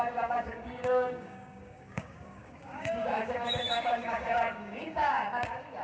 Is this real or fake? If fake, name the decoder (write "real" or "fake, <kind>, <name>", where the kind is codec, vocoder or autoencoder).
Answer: fake, codec, DAC